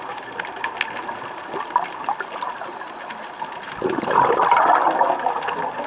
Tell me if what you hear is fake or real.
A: real